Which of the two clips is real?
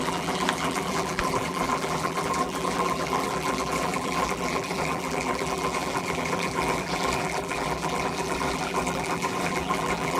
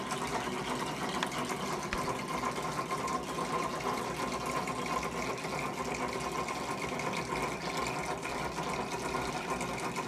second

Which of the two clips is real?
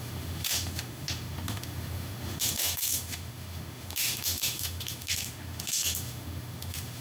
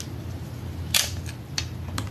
second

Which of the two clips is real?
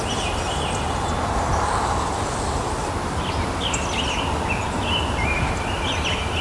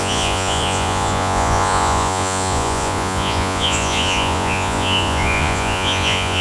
first